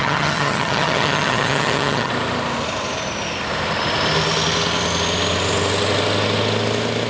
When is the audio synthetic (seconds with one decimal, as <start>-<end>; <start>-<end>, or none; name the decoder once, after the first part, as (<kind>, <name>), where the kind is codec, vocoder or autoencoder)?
0.0-2.1 (vocoder, HiFi-GAN)